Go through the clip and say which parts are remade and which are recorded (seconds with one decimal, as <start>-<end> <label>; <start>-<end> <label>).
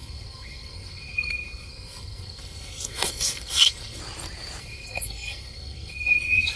0.0-4.0 remade; 4.0-4.6 recorded; 4.6-6.6 remade